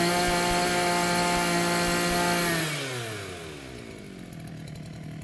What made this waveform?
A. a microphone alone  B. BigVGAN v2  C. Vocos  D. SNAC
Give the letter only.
A